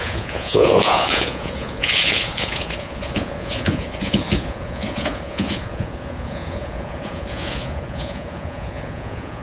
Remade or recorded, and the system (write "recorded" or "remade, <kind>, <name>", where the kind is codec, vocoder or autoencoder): remade, vocoder, Vocos